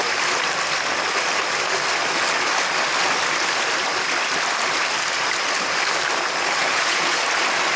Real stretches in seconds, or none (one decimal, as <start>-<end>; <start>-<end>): 0.0-6.6; 7.2-7.8